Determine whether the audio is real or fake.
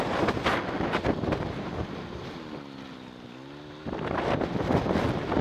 real